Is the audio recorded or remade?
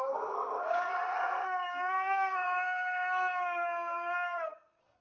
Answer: remade